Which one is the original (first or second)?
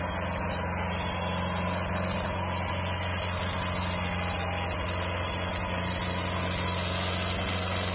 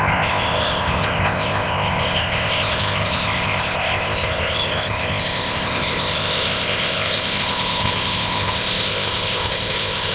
first